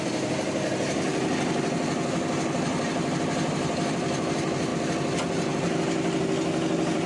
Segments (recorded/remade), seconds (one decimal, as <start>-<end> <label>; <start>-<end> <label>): 0.0-1.1 remade; 1.1-3.2 recorded; 3.2-4.7 remade; 4.7-7.1 recorded